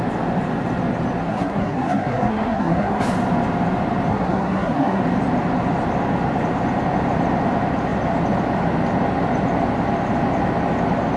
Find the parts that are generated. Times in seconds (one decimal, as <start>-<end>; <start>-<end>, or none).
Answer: 1.2-3.0; 4.1-5.0